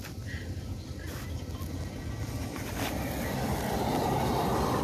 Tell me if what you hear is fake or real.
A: real